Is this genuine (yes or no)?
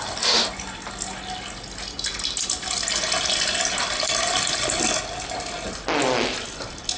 yes